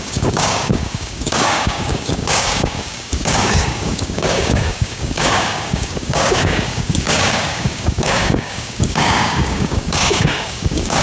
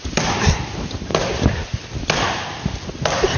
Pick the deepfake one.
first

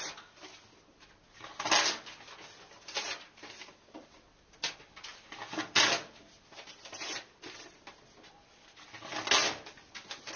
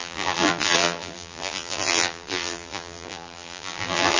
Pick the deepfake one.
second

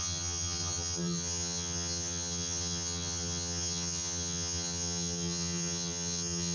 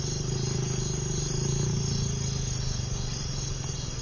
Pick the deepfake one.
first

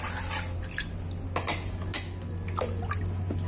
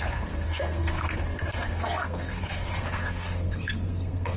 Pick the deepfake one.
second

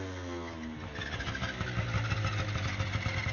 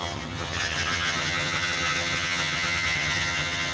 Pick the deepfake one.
second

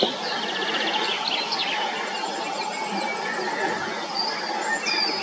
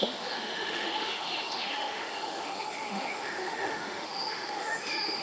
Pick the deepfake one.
second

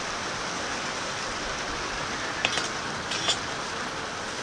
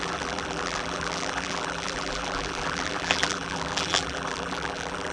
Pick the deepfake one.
second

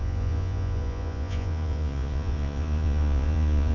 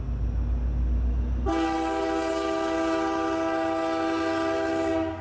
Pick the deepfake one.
first